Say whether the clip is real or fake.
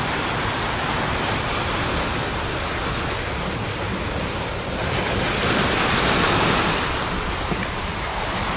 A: real